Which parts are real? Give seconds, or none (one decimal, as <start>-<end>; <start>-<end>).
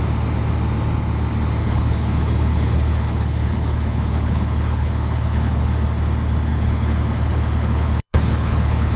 0.0-1.6; 5.6-6.5